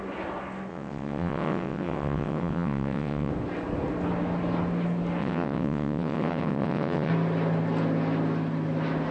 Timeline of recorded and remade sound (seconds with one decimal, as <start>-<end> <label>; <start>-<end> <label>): 0.0-0.7 recorded; 0.7-3.3 remade; 3.3-5.2 recorded; 5.2-7.1 remade; 7.1-9.1 recorded